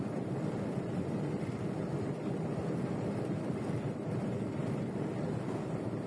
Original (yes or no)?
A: no